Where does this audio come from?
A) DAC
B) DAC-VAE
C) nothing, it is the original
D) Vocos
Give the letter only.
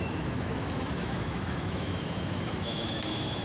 B